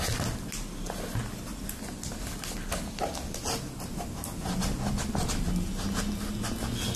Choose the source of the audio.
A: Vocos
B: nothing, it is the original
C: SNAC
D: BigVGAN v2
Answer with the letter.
B